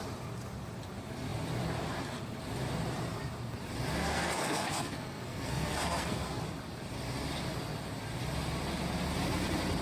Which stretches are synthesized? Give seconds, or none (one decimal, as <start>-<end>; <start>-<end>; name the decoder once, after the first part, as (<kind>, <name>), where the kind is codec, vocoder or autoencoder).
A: 4.0-6.4 (codec, SNAC)